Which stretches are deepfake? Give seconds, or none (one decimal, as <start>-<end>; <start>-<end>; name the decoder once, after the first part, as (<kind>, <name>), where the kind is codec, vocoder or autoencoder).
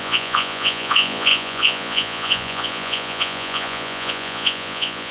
0.0-5.1 (vocoder, Vocos)